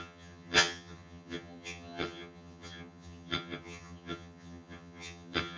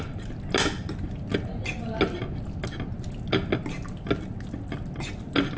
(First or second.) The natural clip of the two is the second